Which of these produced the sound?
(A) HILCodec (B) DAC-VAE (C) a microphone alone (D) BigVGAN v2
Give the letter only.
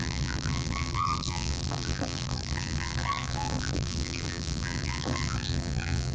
D